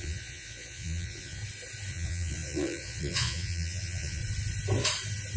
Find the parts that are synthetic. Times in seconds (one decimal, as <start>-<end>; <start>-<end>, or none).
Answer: 0.0-1.4; 1.9-4.2

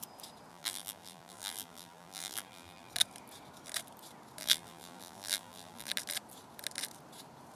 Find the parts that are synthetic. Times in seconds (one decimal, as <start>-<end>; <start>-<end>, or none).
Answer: 0.5-2.9; 4.4-5.9

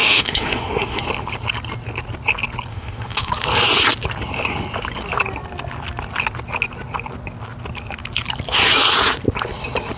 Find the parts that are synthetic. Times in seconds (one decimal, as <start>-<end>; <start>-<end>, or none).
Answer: 0.0-1.0; 2.7-3.3

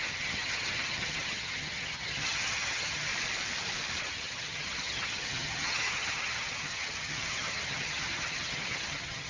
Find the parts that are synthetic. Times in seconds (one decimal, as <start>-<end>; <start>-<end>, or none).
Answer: 0.0-3.1; 4.0-9.3